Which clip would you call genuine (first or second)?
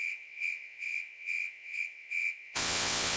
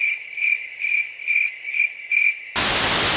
second